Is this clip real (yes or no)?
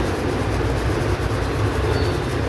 no